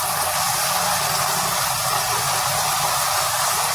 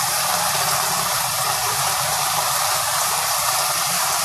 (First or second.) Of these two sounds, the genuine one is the first